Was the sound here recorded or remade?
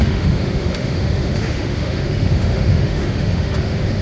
remade